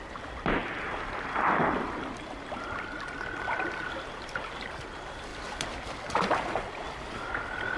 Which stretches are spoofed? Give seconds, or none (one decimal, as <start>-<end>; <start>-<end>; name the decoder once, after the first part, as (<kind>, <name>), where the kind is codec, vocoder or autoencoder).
0.0-0.6 (vocoder, BigVGAN v2); 3.9-5.3